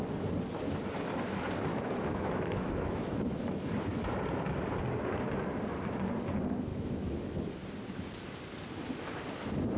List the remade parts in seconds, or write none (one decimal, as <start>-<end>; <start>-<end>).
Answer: 1.7-3.7; 6.7-7.5